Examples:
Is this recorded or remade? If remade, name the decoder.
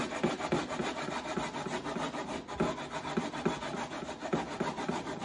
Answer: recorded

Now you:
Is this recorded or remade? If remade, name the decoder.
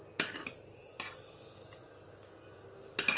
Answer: recorded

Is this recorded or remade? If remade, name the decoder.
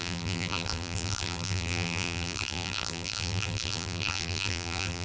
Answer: remade, vocoder, BigVGAN v2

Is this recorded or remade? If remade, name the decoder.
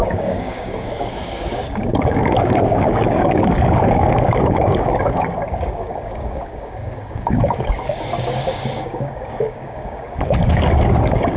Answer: remade, codec, DAC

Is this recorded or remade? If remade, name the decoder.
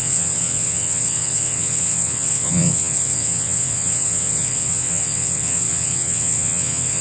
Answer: remade, vocoder, WaveNeXt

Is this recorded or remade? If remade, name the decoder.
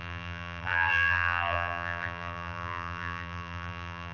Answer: remade, vocoder, BigVGAN v2